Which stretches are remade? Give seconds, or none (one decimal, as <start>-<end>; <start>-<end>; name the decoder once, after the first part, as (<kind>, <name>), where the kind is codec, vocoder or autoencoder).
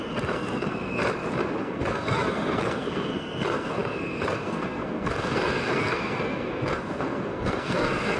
0.0-1.0 (codec, SNAC); 1.6-8.2